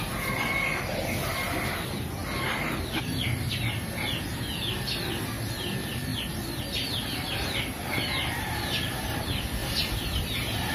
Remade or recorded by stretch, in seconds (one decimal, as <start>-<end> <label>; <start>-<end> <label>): 0.0-9.6 recorded; 9.6-10.7 remade